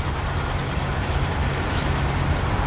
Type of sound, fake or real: real